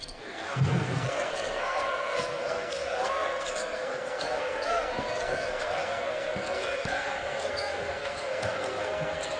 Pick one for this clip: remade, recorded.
remade